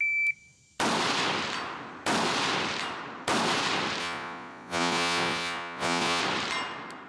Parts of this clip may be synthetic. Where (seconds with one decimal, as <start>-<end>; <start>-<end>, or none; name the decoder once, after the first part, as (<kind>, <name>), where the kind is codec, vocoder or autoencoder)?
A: 4.0-6.2 (vocoder, Vocos)